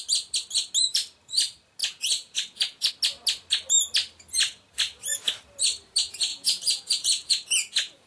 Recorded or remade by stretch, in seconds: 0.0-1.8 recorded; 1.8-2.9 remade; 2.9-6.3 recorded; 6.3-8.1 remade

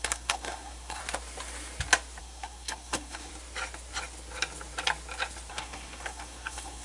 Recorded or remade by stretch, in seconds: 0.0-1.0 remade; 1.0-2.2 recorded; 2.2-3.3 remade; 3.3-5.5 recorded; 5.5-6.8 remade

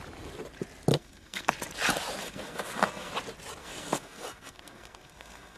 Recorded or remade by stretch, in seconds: 0.0-0.9 recorded; 0.9-1.5 remade; 1.5-2.2 recorded; 2.2-3.1 remade; 3.1-3.6 recorded; 3.6-5.6 remade

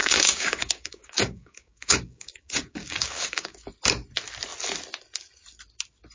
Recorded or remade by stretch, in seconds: 0.0-3.7 remade; 3.7-6.1 recorded

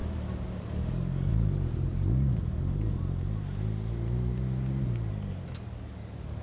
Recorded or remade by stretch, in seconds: 0.0-0.6 recorded; 0.6-1.3 remade; 1.3-5.1 recorded; 5.1-6.4 remade

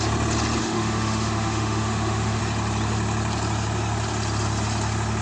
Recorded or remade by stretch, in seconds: 0.0-0.6 recorded; 0.6-2.4 remade; 2.4-5.2 recorded